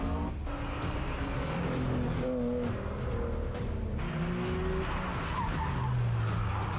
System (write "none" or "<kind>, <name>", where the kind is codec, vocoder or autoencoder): none